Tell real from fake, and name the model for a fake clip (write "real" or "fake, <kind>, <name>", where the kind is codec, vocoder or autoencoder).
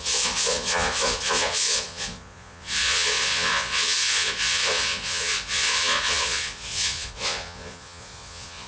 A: fake, vocoder, Vocos